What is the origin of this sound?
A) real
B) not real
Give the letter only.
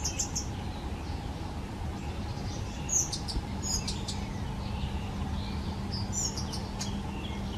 A